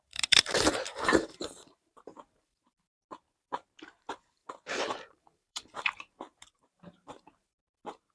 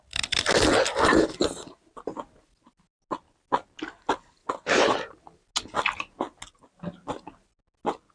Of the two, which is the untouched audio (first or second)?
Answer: second